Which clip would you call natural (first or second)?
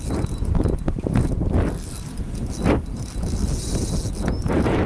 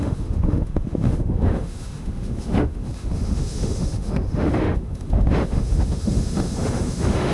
first